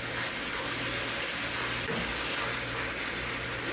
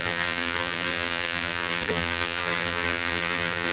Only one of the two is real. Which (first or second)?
first